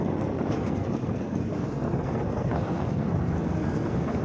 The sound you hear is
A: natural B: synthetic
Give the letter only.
B